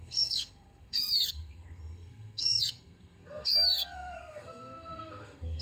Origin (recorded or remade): remade